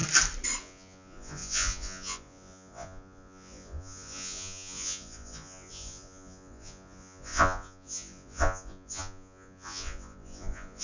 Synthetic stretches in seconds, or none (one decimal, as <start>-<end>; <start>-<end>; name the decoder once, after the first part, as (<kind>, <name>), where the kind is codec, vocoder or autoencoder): 0.6-10.8 (vocoder, Vocos)